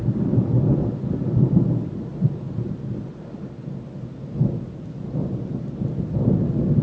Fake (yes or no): no